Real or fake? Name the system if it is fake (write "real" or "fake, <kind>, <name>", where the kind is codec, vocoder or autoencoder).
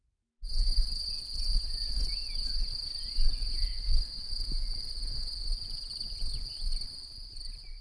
real